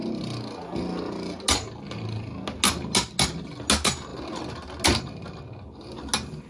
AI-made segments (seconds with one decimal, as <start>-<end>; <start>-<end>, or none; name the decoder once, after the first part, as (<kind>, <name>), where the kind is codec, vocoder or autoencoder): none